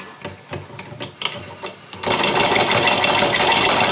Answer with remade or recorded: recorded